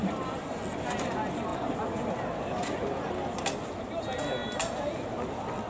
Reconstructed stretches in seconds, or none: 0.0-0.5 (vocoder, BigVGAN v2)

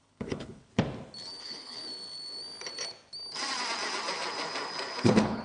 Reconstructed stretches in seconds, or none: 0.0-0.7 (codec, HILCodec); 1.4-1.8; 5.0-5.4

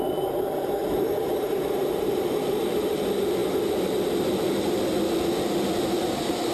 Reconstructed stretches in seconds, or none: 0.8-2.1 (vocoder, BigVGAN v2)